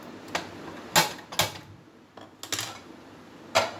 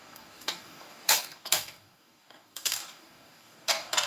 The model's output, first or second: second